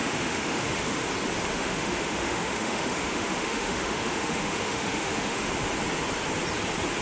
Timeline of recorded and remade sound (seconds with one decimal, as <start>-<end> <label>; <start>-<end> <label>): 0.0-1.0 remade; 1.0-1.5 recorded; 1.5-5.5 remade; 5.5-7.0 recorded